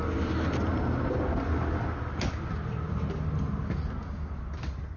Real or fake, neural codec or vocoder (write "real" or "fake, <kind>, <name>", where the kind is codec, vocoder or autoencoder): real